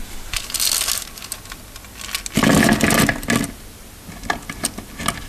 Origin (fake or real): real